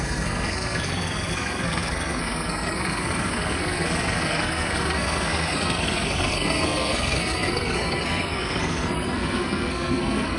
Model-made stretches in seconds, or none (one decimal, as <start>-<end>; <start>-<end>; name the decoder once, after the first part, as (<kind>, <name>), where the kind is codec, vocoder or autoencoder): 0.0-10.4 (codec, SNAC)